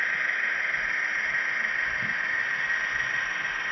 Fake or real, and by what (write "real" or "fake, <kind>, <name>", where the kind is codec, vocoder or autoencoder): real